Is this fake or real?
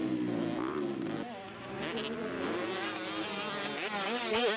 real